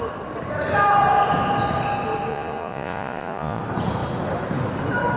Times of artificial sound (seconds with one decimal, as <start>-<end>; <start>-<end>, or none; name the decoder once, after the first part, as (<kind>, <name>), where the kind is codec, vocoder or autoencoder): 2.3-3.6 (vocoder, Vocos)